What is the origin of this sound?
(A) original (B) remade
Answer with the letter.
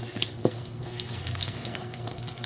B